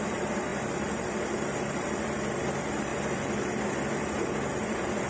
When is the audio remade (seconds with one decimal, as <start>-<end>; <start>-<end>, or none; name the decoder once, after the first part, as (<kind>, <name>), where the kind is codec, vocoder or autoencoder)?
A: none